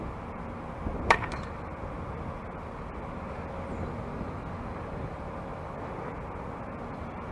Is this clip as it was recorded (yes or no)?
yes